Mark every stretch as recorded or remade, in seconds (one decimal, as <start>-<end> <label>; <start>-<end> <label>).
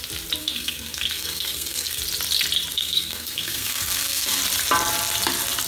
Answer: 0.0-0.4 recorded; 0.4-2.0 remade; 2.0-2.7 recorded; 2.7-4.4 remade; 4.4-5.7 recorded